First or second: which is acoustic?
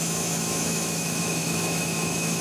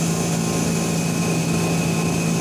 second